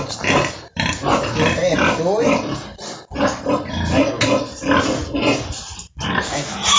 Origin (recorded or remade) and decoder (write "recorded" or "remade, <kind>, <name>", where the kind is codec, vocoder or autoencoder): recorded